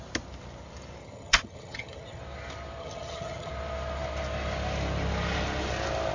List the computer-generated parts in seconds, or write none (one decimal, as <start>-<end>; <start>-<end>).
1.0-2.2; 2.8-3.5